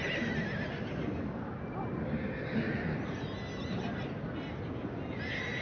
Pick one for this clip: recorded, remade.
recorded